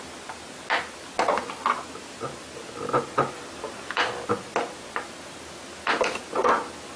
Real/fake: real